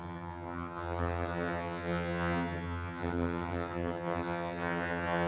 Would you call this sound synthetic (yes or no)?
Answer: yes